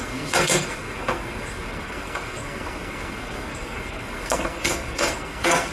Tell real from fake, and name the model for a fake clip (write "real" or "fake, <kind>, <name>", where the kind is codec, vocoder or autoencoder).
fake, codec, SNAC